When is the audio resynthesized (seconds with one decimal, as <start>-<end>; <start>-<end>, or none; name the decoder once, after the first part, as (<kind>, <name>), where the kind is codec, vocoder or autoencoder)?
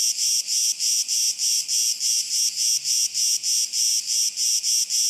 none